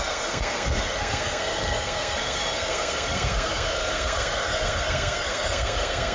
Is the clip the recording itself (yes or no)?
no